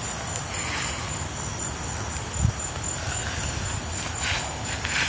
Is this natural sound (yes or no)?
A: yes